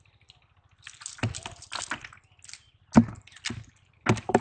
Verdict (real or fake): real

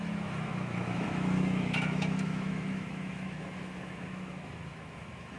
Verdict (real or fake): fake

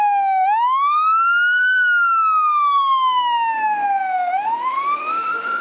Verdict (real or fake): fake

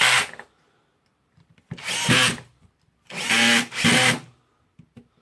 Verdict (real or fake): real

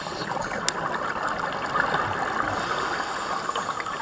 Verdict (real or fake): real